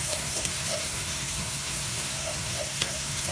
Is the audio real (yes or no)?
no